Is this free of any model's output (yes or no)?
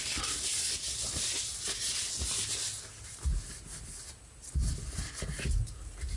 yes